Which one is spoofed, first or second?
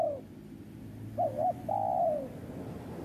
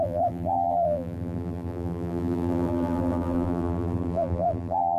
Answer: second